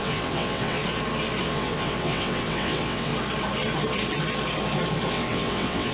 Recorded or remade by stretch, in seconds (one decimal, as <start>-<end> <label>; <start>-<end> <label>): 0.0-0.8 remade; 0.8-1.4 recorded; 1.4-3.1 remade; 3.1-5.1 recorded; 5.1-5.9 remade